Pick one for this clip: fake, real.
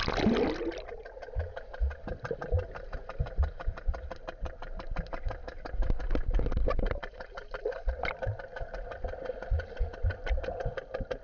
real